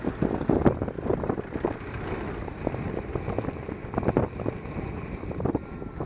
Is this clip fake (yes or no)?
no